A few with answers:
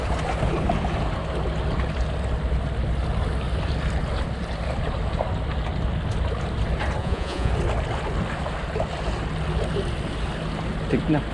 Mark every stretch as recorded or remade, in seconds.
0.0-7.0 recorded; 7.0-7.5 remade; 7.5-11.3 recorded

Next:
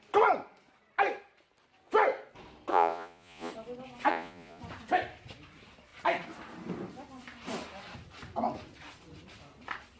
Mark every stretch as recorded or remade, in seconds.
0.0-2.7 recorded; 2.7-3.5 remade; 3.5-4.1 recorded; 4.1-4.6 remade; 4.6-10.0 recorded

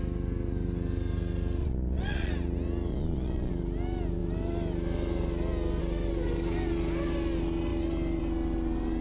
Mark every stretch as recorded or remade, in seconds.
0.0-1.6 recorded; 1.6-2.3 remade; 2.3-2.9 recorded; 2.9-3.5 remade; 3.5-9.0 recorded

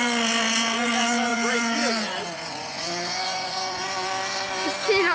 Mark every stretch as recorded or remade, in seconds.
0.0-1.3 recorded; 1.3-3.9 remade; 3.9-5.1 recorded

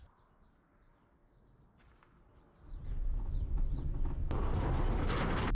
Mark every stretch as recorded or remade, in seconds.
0.0-5.5 recorded

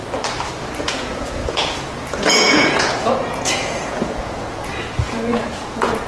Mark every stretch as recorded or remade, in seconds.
0.0-0.8 recorded; 0.8-6.1 remade

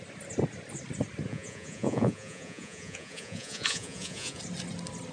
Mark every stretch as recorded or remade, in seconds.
0.0-1.3 recorded; 1.3-4.4 remade; 4.4-5.1 recorded